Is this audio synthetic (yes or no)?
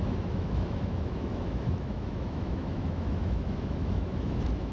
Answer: yes